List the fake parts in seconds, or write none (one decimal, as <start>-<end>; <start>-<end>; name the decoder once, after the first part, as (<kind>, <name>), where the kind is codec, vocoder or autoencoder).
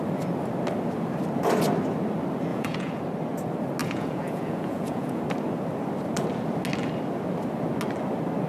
2.5-3.0 (vocoder, Vocos); 3.8-5.2